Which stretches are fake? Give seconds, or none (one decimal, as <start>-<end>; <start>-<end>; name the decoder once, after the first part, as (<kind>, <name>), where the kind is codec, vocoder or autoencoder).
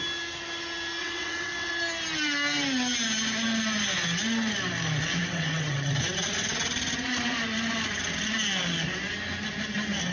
1.0-1.7 (vocoder, WaveNeXt); 5.2-5.9